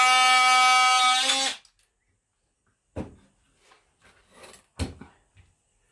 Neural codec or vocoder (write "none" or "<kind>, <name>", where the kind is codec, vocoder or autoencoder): none